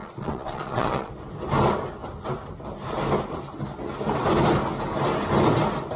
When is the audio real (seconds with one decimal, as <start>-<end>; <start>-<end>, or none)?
1.1-6.0